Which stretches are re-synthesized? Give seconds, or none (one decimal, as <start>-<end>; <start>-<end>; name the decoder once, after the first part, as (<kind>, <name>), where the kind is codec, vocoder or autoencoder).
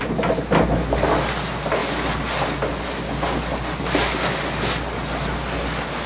none